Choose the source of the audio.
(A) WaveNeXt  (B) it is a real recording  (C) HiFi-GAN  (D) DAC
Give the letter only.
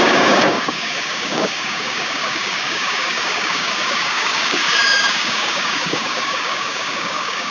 D